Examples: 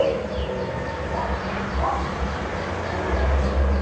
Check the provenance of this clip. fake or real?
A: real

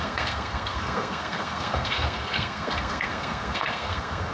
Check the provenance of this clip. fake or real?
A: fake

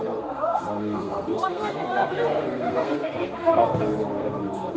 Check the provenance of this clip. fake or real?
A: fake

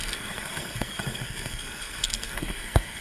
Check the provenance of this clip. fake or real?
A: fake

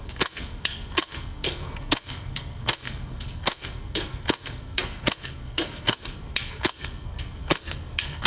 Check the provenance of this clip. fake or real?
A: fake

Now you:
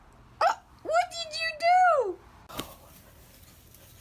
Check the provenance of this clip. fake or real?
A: real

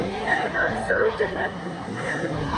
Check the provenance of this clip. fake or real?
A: fake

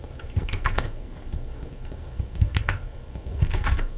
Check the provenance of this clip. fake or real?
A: fake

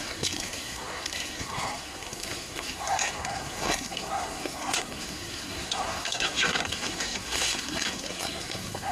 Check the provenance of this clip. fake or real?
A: fake